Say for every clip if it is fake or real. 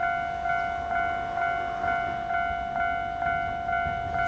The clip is real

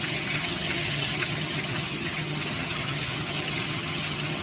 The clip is fake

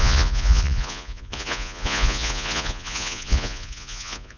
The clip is fake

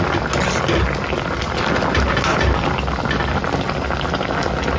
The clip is real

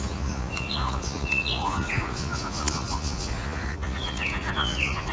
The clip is fake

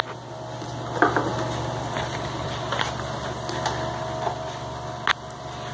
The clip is real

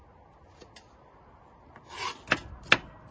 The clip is real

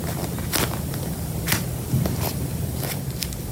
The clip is fake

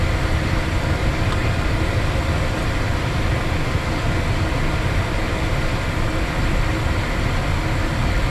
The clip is real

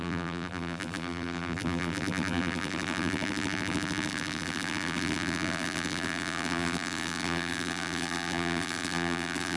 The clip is fake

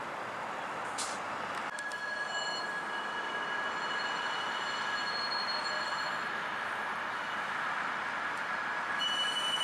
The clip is real